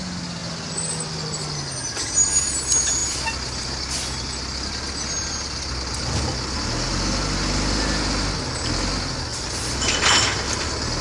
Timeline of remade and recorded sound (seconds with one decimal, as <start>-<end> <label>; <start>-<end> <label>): 0.0-11.0 recorded